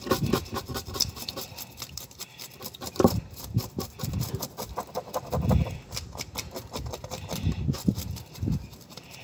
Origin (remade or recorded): remade